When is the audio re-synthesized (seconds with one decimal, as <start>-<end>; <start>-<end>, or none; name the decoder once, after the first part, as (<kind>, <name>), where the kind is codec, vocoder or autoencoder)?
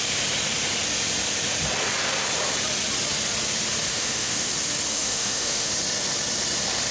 3.9-4.5 (autoencoder, DAC-VAE); 4.9-5.7